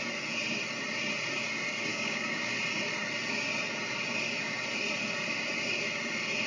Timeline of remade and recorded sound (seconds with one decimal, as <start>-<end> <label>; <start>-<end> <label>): 0.0-1.9 recorded; 1.9-2.5 remade; 2.5-6.5 recorded